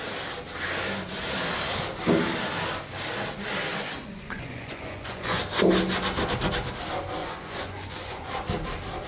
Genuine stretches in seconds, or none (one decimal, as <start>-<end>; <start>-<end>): 0.0-3.7; 5.4-7.2; 8.3-9.1